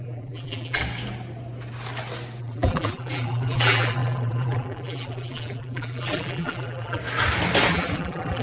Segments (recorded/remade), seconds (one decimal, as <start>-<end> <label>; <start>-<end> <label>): 0.0-0.8 remade; 0.8-2.4 recorded; 2.4-7.0 remade; 7.0-7.7 recorded; 7.7-8.4 remade